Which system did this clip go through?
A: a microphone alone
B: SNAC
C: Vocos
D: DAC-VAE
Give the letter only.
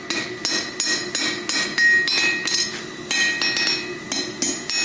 A